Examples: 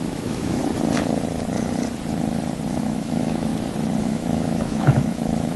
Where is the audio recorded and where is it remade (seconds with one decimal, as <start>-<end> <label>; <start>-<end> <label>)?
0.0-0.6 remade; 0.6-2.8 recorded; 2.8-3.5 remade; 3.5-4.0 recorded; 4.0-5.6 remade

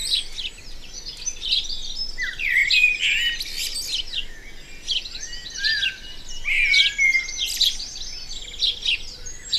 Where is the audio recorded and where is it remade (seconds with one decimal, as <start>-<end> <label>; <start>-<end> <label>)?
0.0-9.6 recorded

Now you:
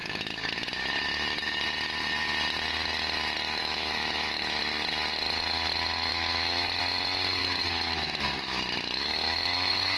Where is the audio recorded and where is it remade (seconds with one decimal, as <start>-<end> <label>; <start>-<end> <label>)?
0.0-1.6 remade; 1.6-3.6 recorded; 3.6-4.6 remade; 4.6-6.1 recorded; 6.1-6.8 remade; 6.8-7.4 recorded; 7.4-10.0 remade

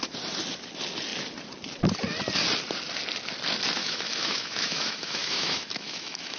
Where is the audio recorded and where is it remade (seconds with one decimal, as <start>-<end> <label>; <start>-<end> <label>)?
0.0-3.8 recorded; 3.8-6.4 remade

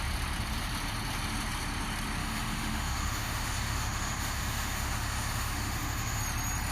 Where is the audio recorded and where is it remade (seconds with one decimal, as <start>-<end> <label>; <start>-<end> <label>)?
0.0-2.2 recorded; 2.2-6.2 remade; 6.2-6.7 recorded

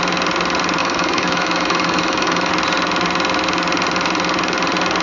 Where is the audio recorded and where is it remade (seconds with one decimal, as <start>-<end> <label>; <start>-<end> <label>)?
0.0-0.8 recorded; 0.8-2.5 remade; 2.5-5.0 recorded

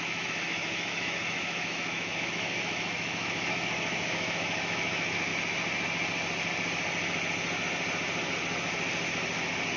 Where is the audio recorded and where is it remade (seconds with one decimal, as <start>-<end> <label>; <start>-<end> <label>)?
0.0-5.3 remade; 5.3-9.8 recorded